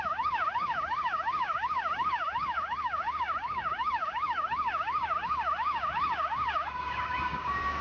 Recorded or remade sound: remade